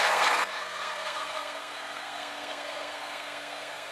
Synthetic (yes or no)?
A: yes